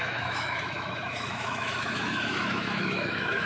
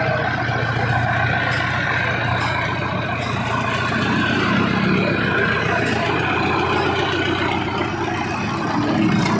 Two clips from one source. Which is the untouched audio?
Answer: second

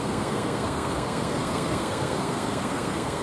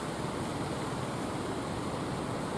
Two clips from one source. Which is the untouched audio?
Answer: second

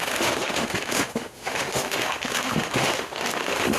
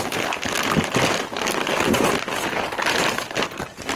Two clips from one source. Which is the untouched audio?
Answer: second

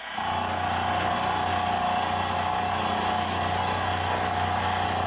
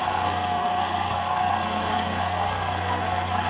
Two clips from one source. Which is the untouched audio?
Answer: first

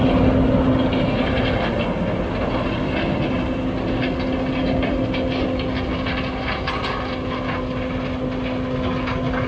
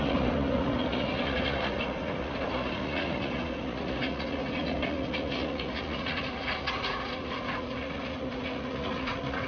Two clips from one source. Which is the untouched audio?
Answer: first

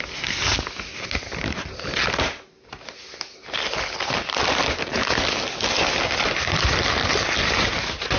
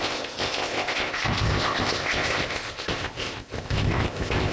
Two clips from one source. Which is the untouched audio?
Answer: first